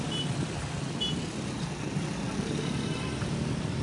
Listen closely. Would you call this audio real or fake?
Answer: real